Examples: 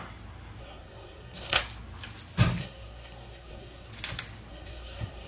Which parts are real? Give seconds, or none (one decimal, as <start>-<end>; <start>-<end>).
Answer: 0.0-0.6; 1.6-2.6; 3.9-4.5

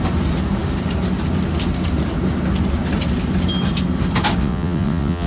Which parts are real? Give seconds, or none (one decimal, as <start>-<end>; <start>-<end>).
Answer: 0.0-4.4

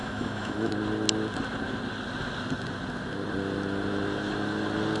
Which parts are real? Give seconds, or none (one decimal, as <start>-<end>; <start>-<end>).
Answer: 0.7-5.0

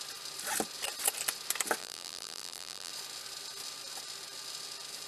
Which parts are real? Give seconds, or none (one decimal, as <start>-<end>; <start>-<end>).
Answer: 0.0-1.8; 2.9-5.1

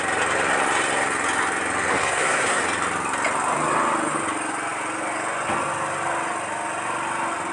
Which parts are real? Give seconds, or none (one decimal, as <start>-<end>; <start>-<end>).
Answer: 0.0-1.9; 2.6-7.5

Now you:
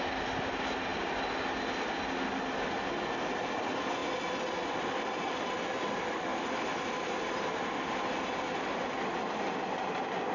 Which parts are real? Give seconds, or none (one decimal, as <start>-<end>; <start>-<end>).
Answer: 0.0-10.3

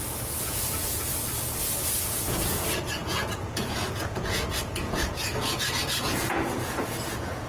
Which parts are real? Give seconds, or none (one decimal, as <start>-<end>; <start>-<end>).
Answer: 1.1-1.8

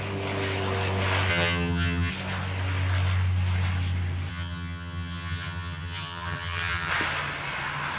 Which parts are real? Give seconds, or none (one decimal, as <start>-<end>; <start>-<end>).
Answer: 0.0-1.3; 2.1-4.3; 6.9-8.0